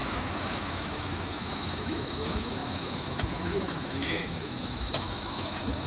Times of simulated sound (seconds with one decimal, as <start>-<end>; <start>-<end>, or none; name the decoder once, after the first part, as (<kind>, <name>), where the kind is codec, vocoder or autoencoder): 0.0-5.9 (autoencoder, DAC-VAE)